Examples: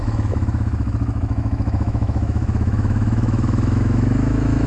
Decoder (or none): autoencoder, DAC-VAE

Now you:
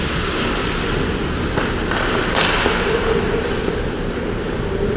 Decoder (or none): vocoder, BigVGAN v2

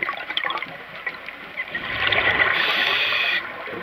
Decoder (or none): vocoder, BigVGAN v2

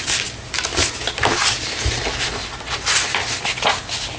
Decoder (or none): none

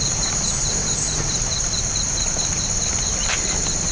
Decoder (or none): none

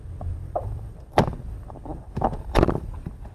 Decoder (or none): vocoder, BigVGAN v2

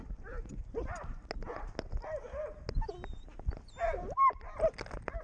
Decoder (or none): none